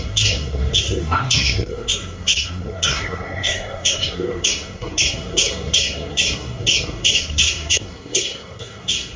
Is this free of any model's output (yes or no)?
no